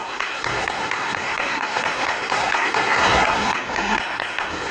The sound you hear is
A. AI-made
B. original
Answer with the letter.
A